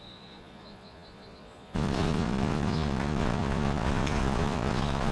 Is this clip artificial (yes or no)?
yes